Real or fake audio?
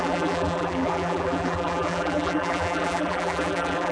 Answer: fake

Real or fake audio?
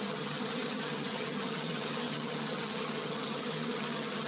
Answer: fake